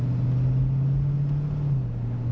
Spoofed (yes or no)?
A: no